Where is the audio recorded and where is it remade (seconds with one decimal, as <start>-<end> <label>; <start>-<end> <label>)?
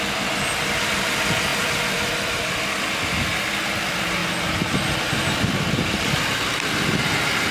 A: 0.0-1.5 recorded; 1.5-2.7 remade; 2.7-4.2 recorded; 4.2-5.1 remade; 5.1-7.5 recorded